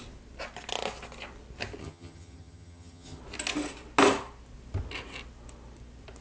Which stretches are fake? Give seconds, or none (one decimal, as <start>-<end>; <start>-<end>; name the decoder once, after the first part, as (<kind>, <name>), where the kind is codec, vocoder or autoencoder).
1.8-3.2 (vocoder, HiFi-GAN)